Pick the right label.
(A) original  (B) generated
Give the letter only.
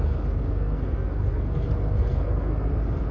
B